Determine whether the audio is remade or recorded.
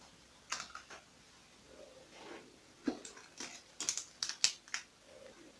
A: recorded